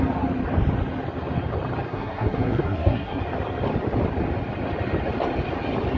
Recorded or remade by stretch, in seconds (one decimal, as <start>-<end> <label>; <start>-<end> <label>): 0.0-1.9 recorded; 1.9-3.2 remade; 3.2-6.0 recorded